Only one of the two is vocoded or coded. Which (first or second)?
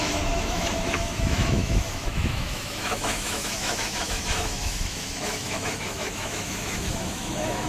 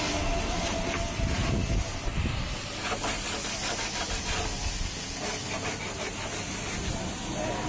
first